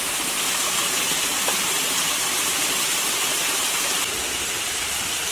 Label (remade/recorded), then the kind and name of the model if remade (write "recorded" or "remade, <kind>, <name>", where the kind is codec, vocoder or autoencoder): recorded